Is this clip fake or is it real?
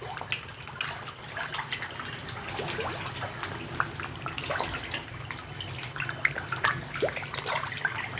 real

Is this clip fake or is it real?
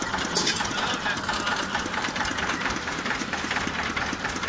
fake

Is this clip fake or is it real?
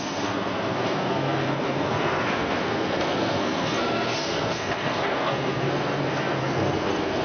fake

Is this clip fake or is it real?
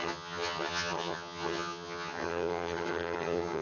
fake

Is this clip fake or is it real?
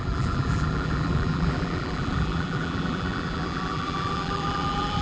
fake